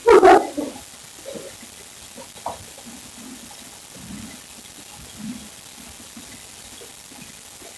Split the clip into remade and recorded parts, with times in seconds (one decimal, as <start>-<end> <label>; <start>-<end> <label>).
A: 0.0-7.8 recorded